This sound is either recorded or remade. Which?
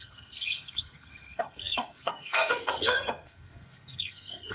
remade